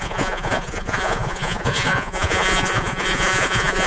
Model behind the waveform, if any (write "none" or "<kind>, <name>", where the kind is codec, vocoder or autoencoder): vocoder, Vocos